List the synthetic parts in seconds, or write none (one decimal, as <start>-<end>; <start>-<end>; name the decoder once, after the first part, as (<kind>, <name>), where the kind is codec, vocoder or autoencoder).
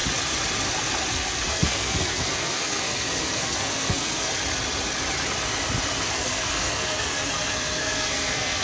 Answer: 1.1-4.3 (codec, SNAC); 6.1-8.6